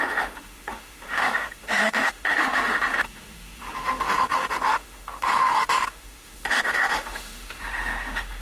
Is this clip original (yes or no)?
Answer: no